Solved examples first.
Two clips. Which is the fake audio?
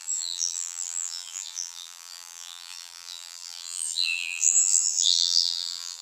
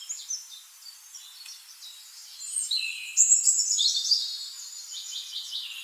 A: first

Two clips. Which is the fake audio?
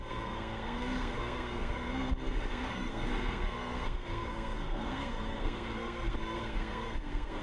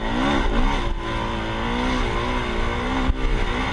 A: first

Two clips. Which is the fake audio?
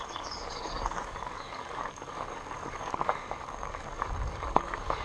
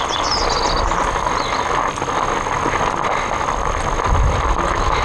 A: first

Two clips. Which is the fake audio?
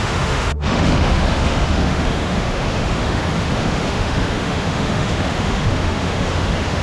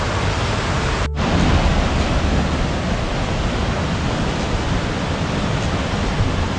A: first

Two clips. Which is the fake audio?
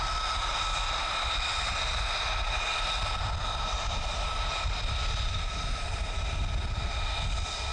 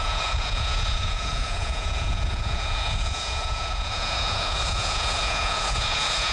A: second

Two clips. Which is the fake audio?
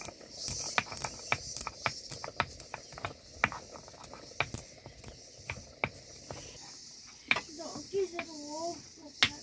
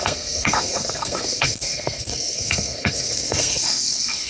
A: second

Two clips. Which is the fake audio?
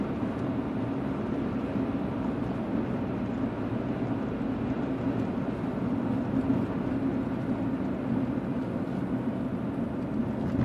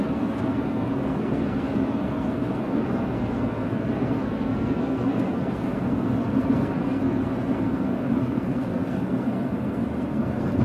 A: second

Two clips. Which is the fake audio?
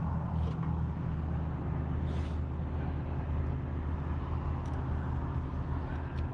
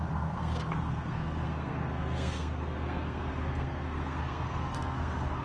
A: second